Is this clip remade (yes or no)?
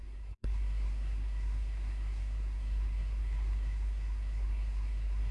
yes